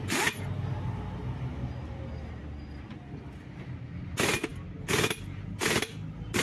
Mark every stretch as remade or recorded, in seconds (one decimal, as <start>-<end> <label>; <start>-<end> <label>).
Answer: 0.0-6.4 recorded